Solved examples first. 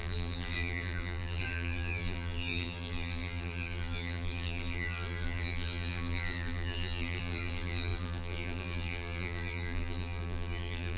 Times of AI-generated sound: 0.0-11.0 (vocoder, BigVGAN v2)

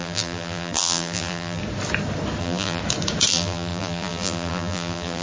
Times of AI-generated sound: 0.0-1.6 (vocoder, BigVGAN v2); 2.4-2.8; 3.3-5.2

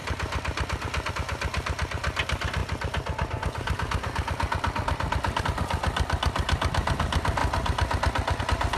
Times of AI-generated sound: none

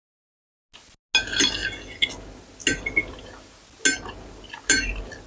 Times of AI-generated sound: none

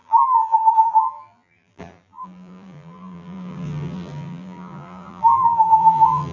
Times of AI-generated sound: 0.0-6.3 (vocoder, BigVGAN v2)